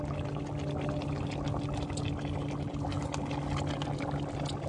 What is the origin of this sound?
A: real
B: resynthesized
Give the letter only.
A